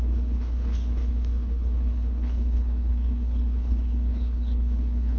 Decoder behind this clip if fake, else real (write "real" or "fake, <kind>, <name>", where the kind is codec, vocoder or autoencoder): fake, codec, HILCodec